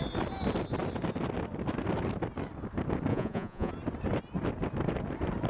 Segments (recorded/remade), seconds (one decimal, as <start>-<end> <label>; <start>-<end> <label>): 0.0-3.1 recorded; 3.1-3.7 remade; 3.7-5.5 recorded